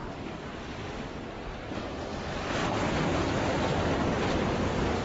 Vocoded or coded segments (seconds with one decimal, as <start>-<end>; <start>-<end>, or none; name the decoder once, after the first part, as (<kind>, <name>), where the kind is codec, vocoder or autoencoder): none